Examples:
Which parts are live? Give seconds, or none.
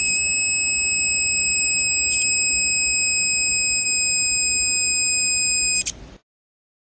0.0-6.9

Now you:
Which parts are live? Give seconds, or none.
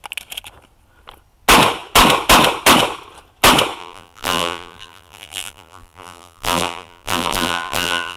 0.0-3.8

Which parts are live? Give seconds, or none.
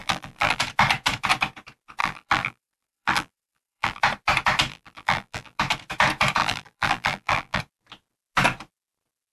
0.6-2.0; 4.0-4.7; 5.6-6.4; 7.6-9.3